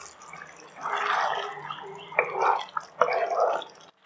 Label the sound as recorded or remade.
recorded